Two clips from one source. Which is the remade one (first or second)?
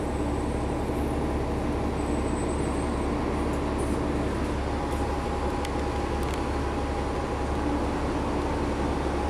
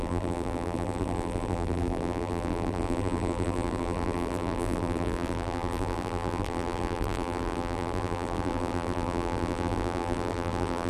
second